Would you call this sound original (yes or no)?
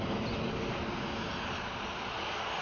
yes